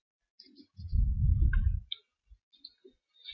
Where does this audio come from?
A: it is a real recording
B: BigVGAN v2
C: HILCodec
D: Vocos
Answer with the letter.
A